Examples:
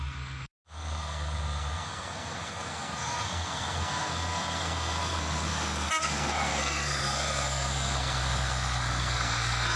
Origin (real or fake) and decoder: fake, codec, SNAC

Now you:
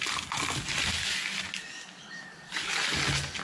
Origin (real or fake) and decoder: real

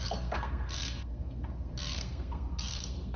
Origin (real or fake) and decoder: fake, codec, SNAC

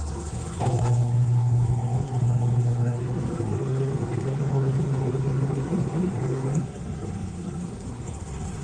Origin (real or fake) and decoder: fake, codec, SNAC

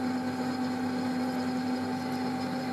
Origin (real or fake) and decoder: real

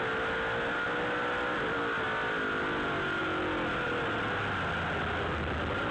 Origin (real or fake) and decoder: real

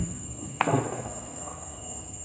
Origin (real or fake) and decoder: fake, codec, SNAC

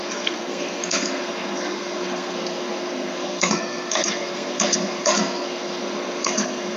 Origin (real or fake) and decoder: fake, codec, SNAC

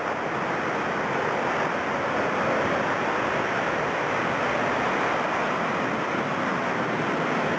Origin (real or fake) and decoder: real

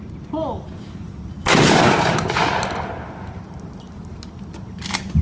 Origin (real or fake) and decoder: real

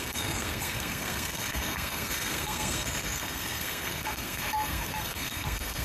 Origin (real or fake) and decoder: fake, codec, SNAC